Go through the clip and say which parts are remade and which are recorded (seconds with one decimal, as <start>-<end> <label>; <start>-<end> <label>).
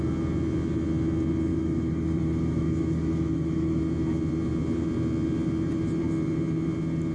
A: 0.0-1.5 recorded; 1.5-3.8 remade; 3.8-7.1 recorded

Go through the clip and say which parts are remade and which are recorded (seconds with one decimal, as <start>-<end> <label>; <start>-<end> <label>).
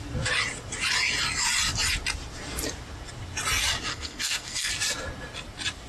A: 0.0-3.9 recorded; 3.9-4.7 remade; 4.7-5.9 recorded